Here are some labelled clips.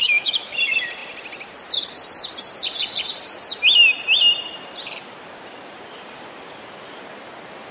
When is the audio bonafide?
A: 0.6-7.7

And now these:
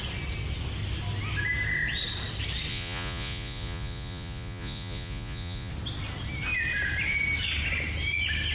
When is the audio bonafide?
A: 0.0-2.7; 5.7-8.5

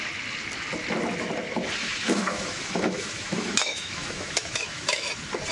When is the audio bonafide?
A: 0.0-1.8; 5.1-5.5

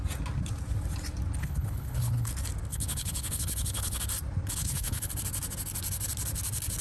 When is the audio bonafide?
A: 0.0-1.4; 2.3-2.7; 4.0-4.6; 5.1-6.8